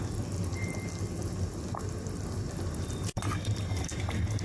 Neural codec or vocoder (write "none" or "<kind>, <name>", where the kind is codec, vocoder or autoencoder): none